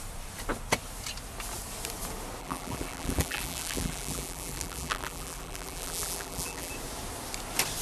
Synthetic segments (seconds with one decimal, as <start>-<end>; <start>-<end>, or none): 2.4-6.7